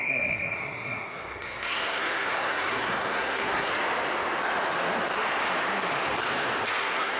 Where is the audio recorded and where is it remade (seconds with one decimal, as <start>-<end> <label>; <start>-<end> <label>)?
0.0-3.7 remade; 3.7-6.8 recorded; 6.8-7.2 remade